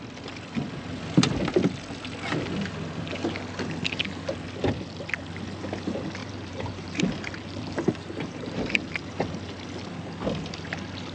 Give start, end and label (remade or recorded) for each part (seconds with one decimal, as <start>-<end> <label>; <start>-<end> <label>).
0.0-6.2 recorded; 6.2-9.0 remade; 9.0-11.1 recorded